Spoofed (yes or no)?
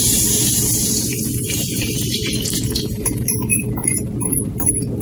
yes